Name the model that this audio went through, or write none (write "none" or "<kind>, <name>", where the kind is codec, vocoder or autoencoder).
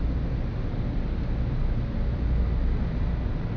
none